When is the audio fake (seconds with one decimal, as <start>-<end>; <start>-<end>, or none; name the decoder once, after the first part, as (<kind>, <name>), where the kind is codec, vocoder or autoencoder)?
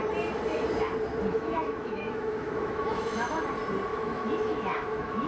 1.3-3.4 (autoencoder, DAC-VAE); 3.9-5.3